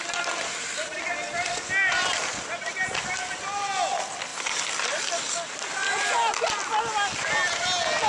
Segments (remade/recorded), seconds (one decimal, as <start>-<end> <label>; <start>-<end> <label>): 0.0-8.1 recorded